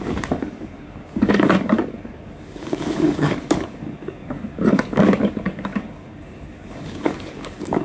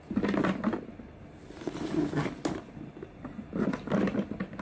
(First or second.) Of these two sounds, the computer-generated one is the first